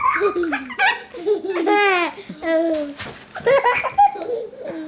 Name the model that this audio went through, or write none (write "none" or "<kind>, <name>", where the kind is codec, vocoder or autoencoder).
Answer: none